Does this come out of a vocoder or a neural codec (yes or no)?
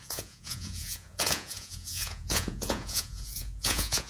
yes